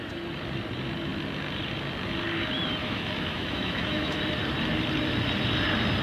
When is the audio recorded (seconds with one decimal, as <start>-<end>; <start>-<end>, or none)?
0.0-2.8; 4.2-6.0